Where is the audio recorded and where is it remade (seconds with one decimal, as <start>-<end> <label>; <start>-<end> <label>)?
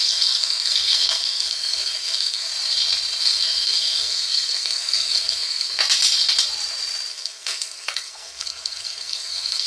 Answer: 0.0-2.5 remade; 2.5-3.2 recorded; 3.2-5.8 remade; 5.8-7.1 recorded; 7.1-9.7 remade